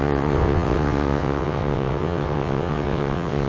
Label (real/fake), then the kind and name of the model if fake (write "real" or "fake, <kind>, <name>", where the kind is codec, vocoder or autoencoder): fake, vocoder, WaveNeXt